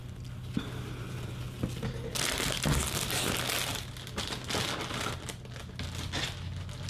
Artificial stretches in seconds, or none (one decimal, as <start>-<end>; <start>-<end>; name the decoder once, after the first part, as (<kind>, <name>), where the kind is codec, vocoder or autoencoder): none